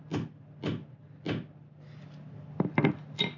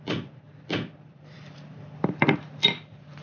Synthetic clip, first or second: second